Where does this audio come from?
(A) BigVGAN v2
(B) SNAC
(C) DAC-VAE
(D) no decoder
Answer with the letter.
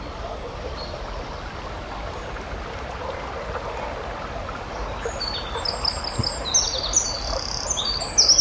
D